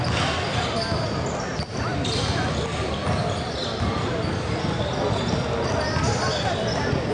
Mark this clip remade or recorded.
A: recorded